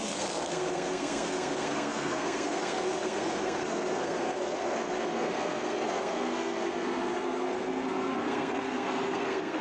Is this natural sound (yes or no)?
no